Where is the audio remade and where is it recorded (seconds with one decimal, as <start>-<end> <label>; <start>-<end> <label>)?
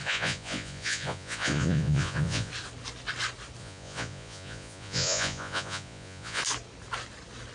0.0-2.5 remade; 2.5-3.6 recorded; 3.6-6.4 remade; 6.4-7.5 recorded